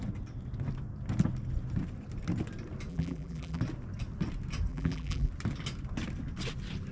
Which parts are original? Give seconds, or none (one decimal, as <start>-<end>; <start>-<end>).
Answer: 0.0-2.9; 3.6-4.7; 5.3-6.9